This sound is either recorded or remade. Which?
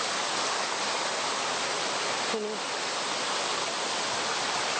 recorded